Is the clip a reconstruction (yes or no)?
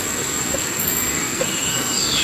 yes